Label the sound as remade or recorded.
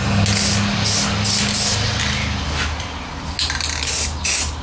recorded